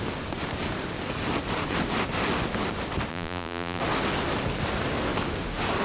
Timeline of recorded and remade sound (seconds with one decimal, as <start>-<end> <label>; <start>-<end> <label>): 0.0-3.1 recorded; 3.1-3.8 remade; 3.8-5.8 recorded